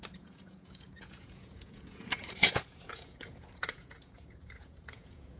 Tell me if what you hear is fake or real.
fake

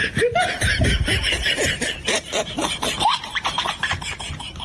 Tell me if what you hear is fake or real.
fake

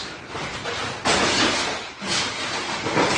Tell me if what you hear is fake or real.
real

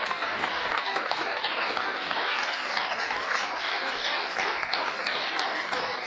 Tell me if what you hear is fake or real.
fake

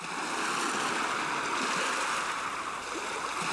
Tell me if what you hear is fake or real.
real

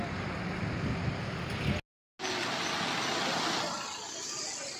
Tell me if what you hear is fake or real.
real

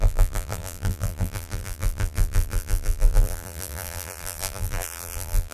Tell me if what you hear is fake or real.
fake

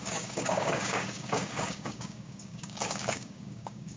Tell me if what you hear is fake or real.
fake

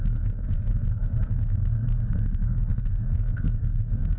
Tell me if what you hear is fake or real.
fake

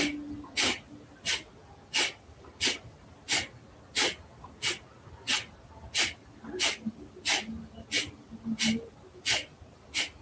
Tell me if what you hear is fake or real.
real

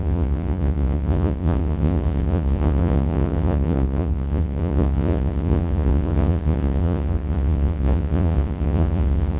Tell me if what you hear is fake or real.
fake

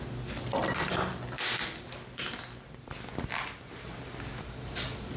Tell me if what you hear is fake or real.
real